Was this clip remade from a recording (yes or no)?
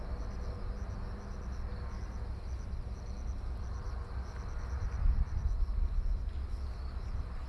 no